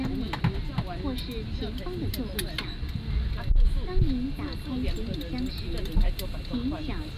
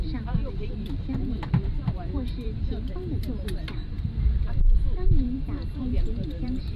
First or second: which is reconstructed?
second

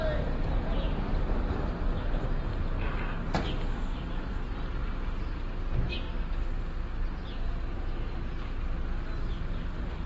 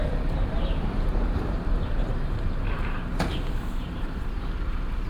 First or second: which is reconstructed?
second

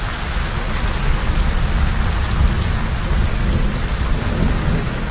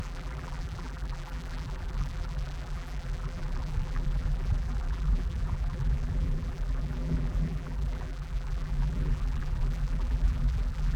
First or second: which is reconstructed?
second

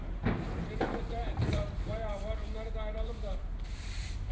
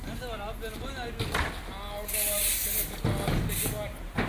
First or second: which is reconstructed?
first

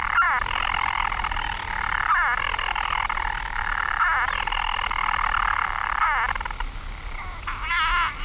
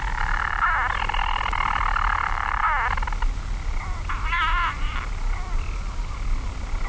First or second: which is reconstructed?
second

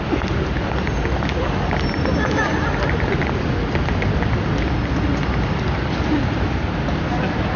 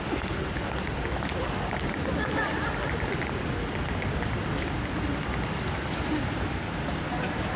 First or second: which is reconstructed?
second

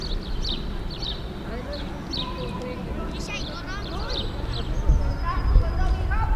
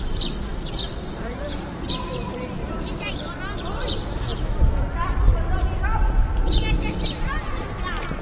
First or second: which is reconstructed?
second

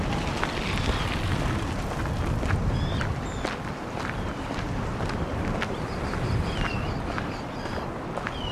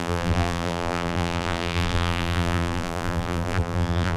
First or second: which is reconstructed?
second